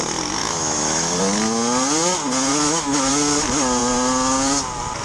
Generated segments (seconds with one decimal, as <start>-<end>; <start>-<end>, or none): 0.4-1.2; 2.5-3.1